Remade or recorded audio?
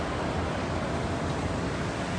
recorded